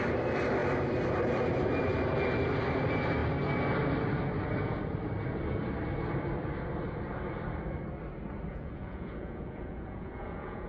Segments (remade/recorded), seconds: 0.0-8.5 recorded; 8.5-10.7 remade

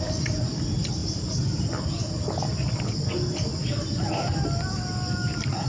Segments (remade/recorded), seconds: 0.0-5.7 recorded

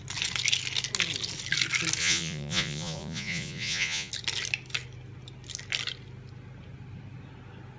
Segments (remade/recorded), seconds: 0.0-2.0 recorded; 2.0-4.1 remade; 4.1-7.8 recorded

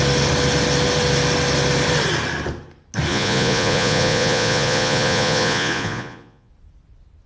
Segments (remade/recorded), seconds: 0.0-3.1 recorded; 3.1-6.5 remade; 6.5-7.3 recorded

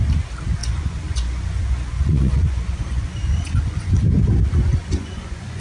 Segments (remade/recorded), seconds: 0.0-0.6 recorded; 0.6-4.0 remade; 4.0-4.8 recorded; 4.8-5.6 remade

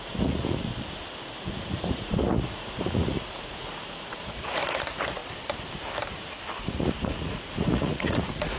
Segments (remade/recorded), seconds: 0.0-0.7 remade; 0.7-1.4 recorded; 1.4-5.2 remade; 5.2-6.6 recorded; 6.6-8.6 remade

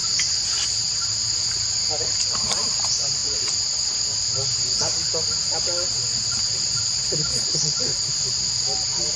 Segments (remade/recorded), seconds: 0.0-7.2 recorded; 7.2-7.8 remade; 7.8-9.2 recorded